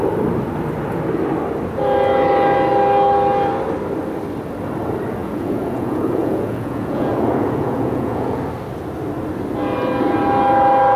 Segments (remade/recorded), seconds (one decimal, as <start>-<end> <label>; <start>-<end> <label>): 0.0-5.2 recorded; 5.2-8.4 remade; 8.4-11.0 recorded